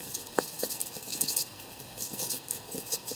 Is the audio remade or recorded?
remade